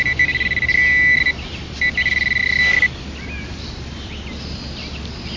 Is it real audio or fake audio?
real